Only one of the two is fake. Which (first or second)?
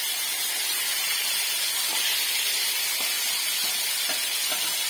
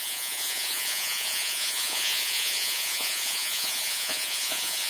second